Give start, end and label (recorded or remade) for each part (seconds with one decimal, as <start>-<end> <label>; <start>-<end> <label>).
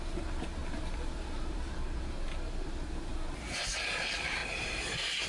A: 0.0-3.1 remade; 3.1-4.0 recorded; 4.0-5.3 remade